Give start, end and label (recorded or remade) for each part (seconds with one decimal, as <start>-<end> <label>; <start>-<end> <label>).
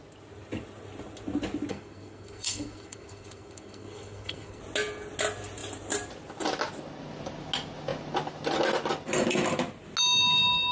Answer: 0.0-1.7 recorded; 1.7-4.6 remade; 4.6-10.7 recorded